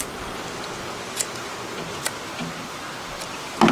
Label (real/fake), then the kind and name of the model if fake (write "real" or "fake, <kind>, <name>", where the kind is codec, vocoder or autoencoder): real